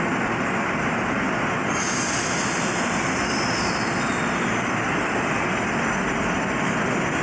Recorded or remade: recorded